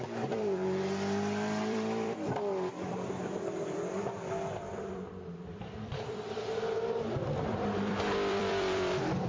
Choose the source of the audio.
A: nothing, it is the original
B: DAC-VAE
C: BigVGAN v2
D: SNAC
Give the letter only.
C